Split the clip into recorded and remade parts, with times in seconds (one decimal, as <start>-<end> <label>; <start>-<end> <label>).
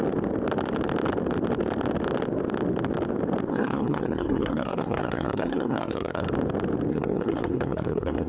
0.0-3.5 recorded; 3.5-6.3 remade; 6.3-6.9 recorded; 6.9-8.3 remade